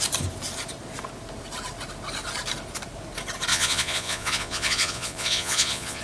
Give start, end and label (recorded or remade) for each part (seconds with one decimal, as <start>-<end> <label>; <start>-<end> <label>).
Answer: 0.0-3.5 recorded; 3.5-6.0 remade